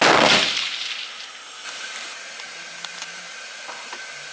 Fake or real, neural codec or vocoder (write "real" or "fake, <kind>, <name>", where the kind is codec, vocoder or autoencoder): real